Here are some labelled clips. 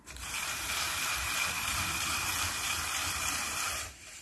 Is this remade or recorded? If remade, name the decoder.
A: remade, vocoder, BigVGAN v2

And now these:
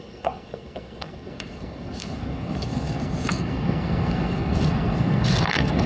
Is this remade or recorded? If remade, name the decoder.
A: remade, codec, SNAC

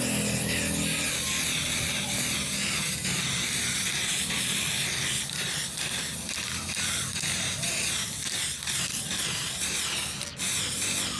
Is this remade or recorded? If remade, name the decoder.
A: recorded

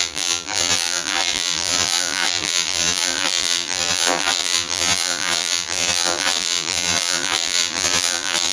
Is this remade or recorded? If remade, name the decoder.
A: remade, vocoder, BigVGAN v2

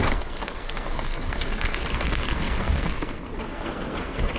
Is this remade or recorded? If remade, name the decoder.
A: remade, codec, SNAC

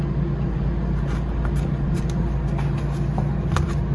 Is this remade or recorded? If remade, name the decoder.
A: recorded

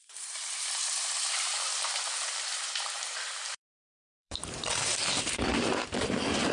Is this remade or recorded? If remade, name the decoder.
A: remade, vocoder, BigVGAN v2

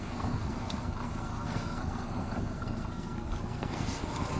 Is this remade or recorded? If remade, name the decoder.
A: remade, codec, SNAC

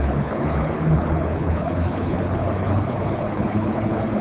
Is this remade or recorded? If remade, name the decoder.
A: remade, codec, HILCodec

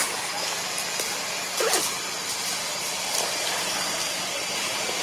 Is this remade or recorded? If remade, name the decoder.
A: recorded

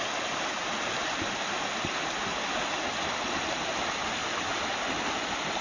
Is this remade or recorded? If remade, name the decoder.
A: recorded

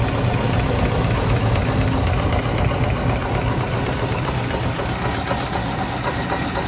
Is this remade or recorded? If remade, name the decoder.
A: recorded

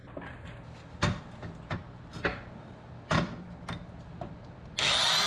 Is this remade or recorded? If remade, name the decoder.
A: recorded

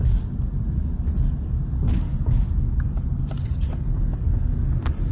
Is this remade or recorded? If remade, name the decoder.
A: recorded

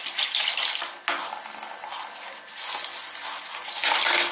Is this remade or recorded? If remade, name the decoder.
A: recorded